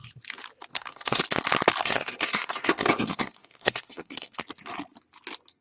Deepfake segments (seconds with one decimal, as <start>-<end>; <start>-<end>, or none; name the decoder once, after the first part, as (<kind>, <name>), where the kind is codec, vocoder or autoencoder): 0.7-1.2 (codec, SNAC); 1.8-4.4